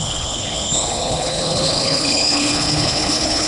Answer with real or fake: fake